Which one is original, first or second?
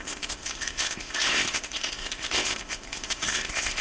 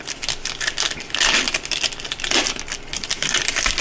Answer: second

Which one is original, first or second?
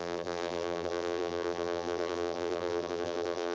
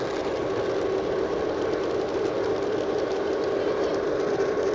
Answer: second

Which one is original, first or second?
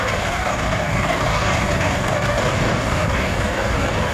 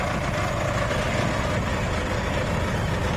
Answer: second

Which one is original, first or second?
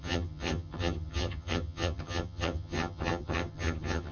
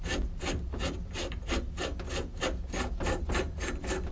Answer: second